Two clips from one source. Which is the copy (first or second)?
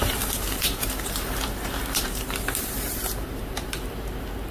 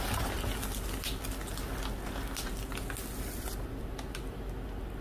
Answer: first